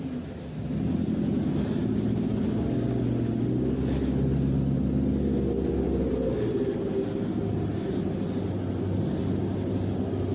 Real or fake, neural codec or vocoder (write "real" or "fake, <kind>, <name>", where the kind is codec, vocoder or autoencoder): real